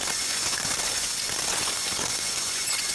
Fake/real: fake